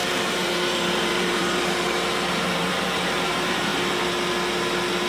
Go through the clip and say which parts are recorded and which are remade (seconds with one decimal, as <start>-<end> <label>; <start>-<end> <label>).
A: 0.0-3.7 remade; 3.7-5.1 recorded